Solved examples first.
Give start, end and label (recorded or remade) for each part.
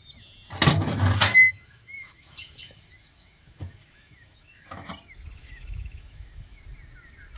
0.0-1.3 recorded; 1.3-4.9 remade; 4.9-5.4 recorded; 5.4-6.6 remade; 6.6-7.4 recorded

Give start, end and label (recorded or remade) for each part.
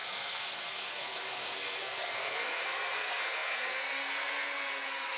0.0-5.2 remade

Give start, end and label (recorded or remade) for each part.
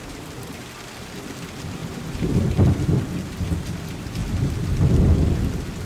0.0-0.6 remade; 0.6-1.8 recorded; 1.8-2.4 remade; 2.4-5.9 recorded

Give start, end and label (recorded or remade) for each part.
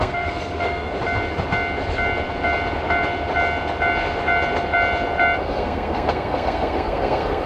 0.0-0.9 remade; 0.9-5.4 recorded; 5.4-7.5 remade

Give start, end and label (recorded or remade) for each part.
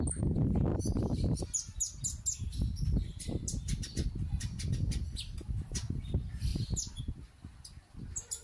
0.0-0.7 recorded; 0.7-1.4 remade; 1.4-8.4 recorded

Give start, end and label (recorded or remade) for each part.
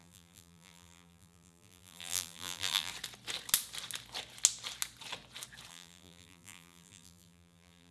0.0-2.9 remade; 2.9-5.7 recorded; 5.7-7.9 remade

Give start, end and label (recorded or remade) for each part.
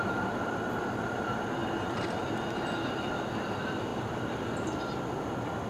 0.0-3.9 recorded; 3.9-4.8 remade; 4.8-5.7 recorded